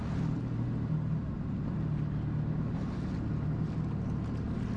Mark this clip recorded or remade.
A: recorded